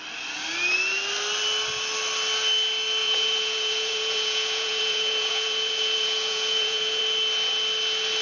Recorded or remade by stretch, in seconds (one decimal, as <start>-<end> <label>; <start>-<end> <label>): 0.0-3.0 recorded; 3.0-7.0 remade; 7.0-8.2 recorded